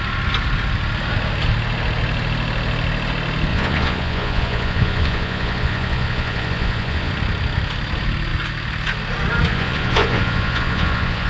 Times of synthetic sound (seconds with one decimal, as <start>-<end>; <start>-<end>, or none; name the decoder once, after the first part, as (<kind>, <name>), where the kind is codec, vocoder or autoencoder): 3.5-7.1 (vocoder, Vocos); 9.5-11.3